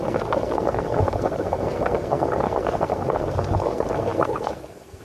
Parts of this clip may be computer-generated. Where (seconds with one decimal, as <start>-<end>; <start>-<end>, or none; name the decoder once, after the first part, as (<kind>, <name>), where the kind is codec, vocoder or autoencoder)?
0.0-5.0 (codec, SNAC)